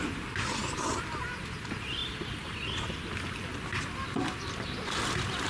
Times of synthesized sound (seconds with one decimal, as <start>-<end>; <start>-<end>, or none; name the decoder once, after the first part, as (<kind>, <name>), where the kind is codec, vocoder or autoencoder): 0.0-2.0 (vocoder, BigVGAN v2)